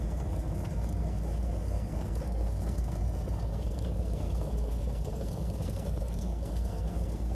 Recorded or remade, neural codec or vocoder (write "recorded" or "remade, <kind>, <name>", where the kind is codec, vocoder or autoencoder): remade, codec, SNAC